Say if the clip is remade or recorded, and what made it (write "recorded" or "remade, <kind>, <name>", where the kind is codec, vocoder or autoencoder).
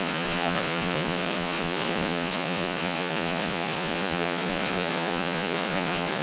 remade, vocoder, Vocos